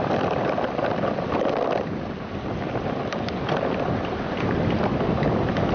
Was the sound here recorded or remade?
recorded